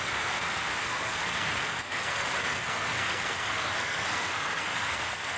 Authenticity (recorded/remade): remade